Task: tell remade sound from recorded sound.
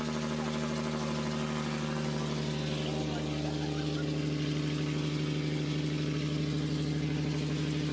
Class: recorded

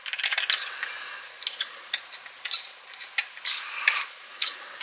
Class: recorded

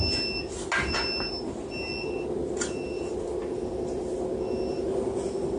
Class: recorded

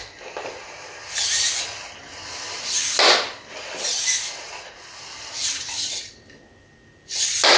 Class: recorded